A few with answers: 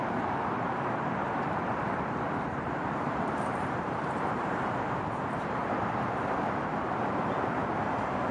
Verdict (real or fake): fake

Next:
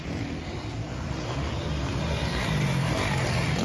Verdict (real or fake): fake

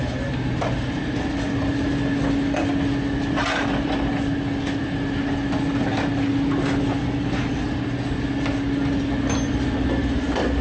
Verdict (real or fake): real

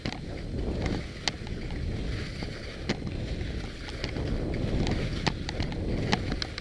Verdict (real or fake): real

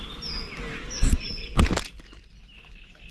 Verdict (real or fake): real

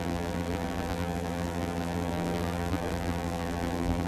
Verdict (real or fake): fake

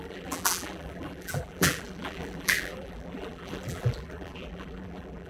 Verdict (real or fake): fake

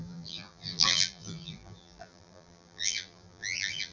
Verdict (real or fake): fake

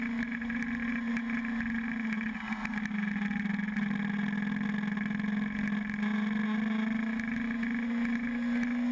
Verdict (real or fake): real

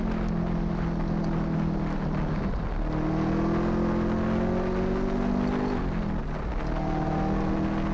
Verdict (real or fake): real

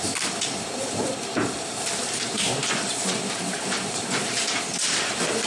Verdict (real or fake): fake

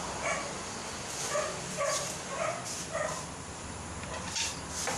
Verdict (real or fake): fake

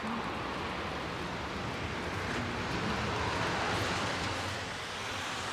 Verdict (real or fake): real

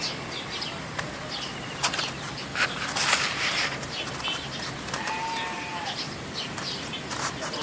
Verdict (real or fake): fake